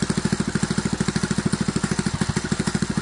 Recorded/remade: recorded